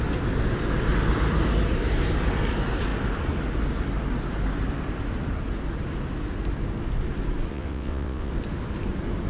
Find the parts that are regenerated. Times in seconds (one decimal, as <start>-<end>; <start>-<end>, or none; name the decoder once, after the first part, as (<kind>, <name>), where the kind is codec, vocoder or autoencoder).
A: 7.5-8.3 (vocoder, WaveNeXt)